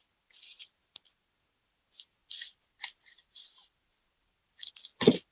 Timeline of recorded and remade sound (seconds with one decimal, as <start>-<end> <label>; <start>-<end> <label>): 0.0-2.2 recorded; 2.2-4.7 remade; 4.7-5.3 recorded